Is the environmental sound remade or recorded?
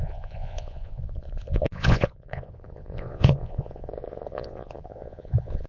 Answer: remade